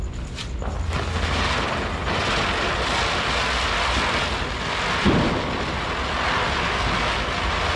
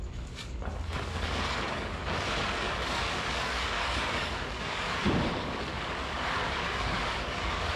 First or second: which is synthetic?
second